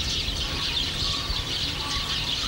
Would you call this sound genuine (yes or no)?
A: yes